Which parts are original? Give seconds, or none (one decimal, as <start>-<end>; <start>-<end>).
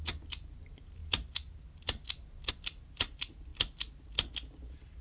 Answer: 0.0-5.0